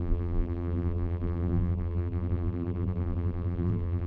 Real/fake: fake